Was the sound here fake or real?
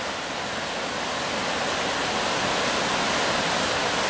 real